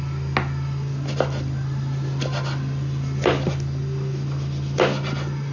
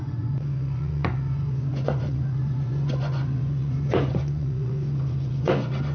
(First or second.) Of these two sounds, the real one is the first